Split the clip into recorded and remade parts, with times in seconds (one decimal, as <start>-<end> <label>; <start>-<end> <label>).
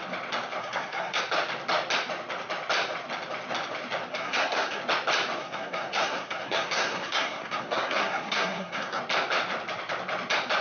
0.0-0.6 recorded; 0.6-1.2 remade; 1.2-4.1 recorded; 4.1-4.8 remade; 4.8-5.4 recorded; 5.4-9.0 remade; 9.0-10.6 recorded